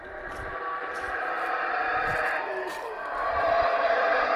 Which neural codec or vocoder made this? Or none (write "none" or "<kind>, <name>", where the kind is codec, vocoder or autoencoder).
none